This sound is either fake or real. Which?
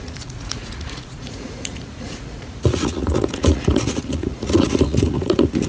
fake